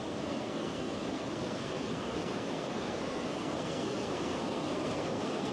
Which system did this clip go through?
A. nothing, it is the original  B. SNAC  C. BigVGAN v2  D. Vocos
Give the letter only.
B